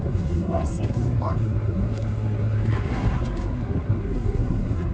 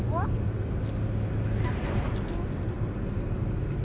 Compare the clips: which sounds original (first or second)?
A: second